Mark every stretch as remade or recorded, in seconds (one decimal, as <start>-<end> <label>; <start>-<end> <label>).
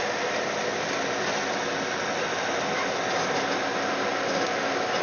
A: 0.0-5.0 recorded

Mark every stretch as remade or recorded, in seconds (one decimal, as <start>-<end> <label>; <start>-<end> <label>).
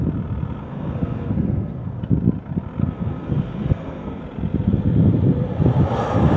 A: 0.0-0.6 recorded; 0.6-2.0 remade; 2.0-2.8 recorded; 2.8-4.2 remade; 4.2-6.4 recorded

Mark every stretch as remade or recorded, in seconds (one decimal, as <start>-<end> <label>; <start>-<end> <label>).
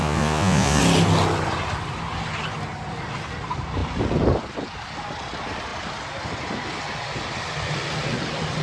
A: 0.0-0.8 remade; 0.8-8.6 recorded